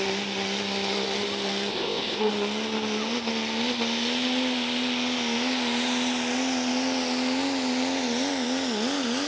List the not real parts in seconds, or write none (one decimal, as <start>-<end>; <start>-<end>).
1.7-2.3